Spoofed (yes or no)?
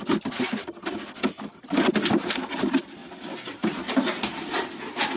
no